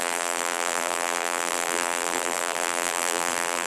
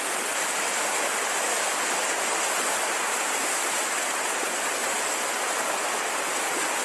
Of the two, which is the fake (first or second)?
first